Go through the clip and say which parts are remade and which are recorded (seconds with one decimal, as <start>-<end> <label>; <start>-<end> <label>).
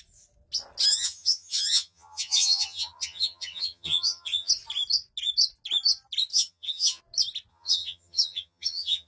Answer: 0.0-0.9 recorded; 0.9-4.5 remade; 4.5-6.3 recorded; 6.3-7.0 remade; 7.0-7.5 recorded; 7.5-9.1 remade